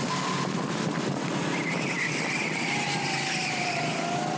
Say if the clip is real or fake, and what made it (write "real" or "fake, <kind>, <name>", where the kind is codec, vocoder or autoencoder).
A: real